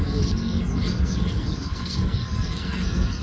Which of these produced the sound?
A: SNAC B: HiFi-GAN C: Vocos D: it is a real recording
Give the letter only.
A